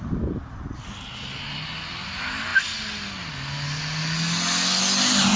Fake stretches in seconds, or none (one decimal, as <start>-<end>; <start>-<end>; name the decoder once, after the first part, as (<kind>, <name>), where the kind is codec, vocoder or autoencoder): none